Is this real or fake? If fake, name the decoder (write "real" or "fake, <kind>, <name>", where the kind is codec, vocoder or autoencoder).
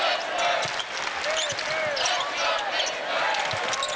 real